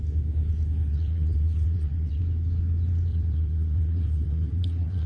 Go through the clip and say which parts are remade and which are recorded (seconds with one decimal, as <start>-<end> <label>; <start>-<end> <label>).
0.0-0.9 recorded; 0.9-2.2 remade; 2.2-3.1 recorded; 3.1-5.1 remade